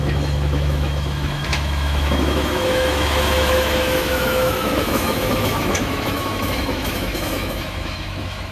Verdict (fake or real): fake